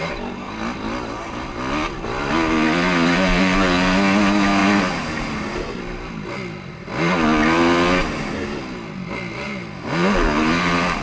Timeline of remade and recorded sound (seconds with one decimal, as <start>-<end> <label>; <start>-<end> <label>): 0.0-11.0 recorded